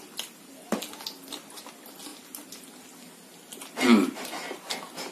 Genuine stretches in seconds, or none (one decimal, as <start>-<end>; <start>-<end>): 0.0-5.1

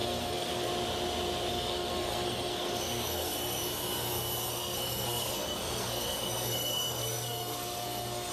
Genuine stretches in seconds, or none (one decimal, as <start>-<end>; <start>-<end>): 0.7-1.5; 3.6-4.5

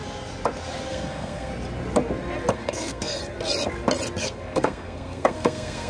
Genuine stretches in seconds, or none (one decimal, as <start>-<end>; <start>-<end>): 0.0-0.9; 1.5-2.5; 3.2-4.2

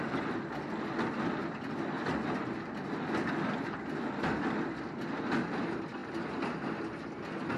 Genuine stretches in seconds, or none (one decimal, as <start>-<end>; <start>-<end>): 0.0-7.6